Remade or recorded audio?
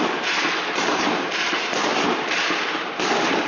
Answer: remade